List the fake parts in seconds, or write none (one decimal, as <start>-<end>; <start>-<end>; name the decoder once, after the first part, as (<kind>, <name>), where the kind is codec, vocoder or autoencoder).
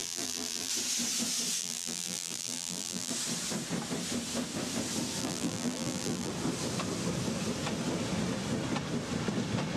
0.0-0.7 (vocoder, BigVGAN v2); 1.6-3.1; 5.2-6.3